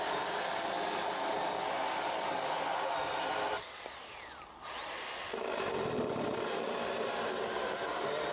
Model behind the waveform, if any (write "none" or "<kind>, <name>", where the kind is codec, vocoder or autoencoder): none